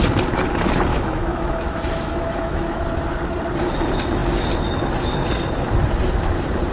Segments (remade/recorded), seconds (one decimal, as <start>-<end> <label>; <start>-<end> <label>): 0.0-0.9 recorded; 0.9-2.8 remade; 2.8-6.7 recorded